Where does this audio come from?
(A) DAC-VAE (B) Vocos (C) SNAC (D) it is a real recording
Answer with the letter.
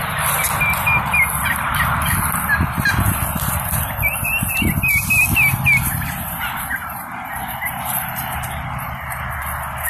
D